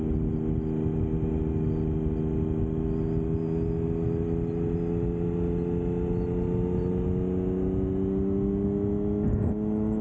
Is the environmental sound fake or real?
real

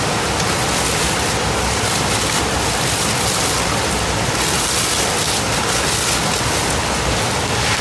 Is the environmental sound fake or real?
real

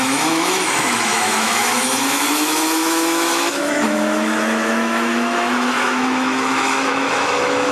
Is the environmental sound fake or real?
fake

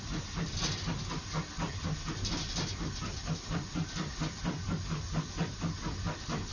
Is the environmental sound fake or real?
real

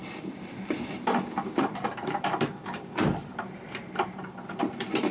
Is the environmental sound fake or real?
fake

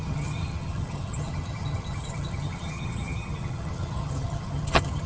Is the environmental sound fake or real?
fake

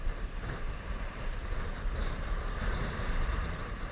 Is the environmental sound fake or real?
fake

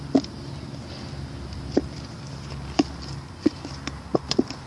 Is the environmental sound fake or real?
real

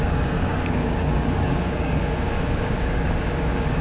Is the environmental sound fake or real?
fake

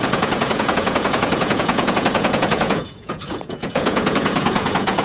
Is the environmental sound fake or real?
fake